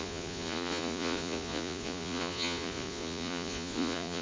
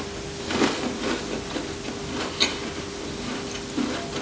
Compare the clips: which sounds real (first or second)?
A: second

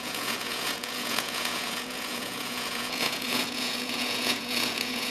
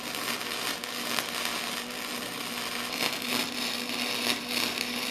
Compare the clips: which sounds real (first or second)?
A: second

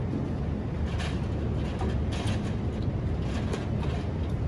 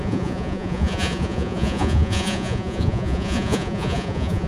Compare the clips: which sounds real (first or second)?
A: first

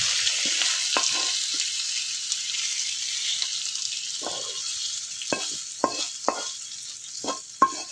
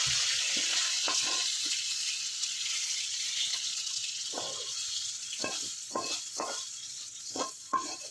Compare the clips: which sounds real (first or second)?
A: first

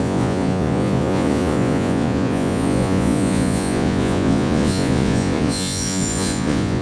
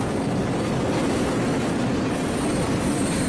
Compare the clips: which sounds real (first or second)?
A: second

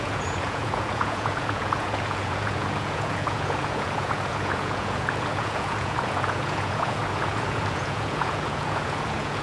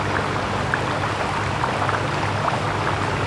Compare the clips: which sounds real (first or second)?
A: second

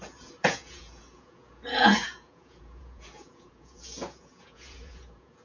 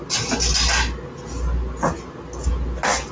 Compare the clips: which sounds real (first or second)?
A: second